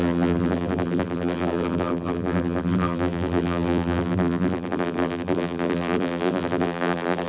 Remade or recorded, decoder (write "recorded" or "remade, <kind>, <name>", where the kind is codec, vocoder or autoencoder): remade, vocoder, BigVGAN v2